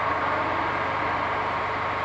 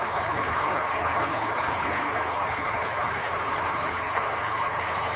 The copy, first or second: second